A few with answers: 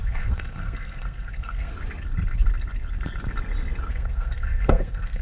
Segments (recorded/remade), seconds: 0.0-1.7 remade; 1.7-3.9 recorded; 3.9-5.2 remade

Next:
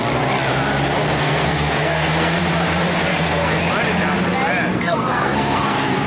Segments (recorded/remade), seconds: 0.0-1.2 recorded; 1.2-2.4 remade; 2.4-3.1 recorded; 3.1-3.6 remade; 3.6-4.7 recorded; 4.7-6.1 remade

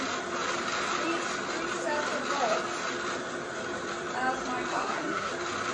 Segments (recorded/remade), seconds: 0.0-4.7 recorded; 4.7-5.3 remade; 5.3-5.7 recorded

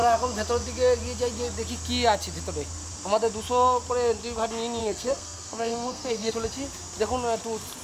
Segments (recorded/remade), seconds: 0.0-4.8 recorded; 4.8-6.3 remade; 6.3-7.8 recorded

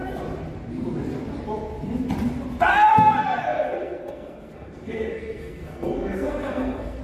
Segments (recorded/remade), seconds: 0.0-2.7 recorded; 2.7-7.0 remade